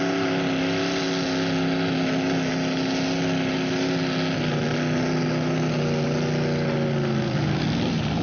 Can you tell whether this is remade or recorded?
recorded